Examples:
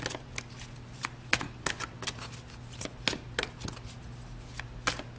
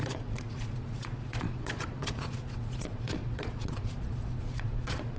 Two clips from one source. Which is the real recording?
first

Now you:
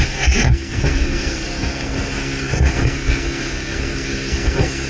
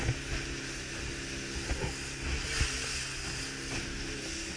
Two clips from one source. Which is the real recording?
second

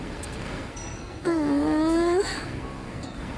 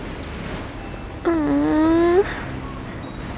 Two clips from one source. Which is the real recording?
second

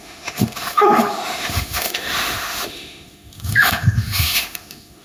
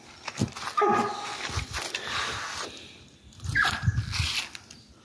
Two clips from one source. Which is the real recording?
second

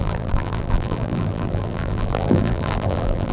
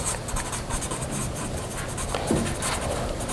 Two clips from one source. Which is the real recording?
second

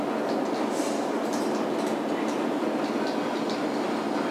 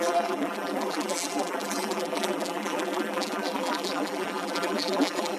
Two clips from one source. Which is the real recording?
first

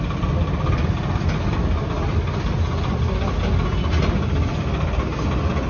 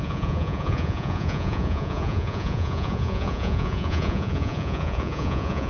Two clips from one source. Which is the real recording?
first